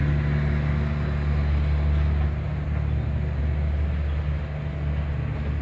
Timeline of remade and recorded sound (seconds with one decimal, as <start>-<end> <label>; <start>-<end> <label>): 0.0-5.6 recorded